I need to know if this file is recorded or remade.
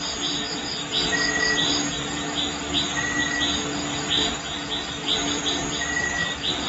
recorded